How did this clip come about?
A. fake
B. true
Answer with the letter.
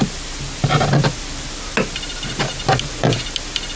B